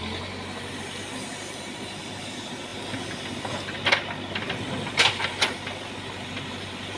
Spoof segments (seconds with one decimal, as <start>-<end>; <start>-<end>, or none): none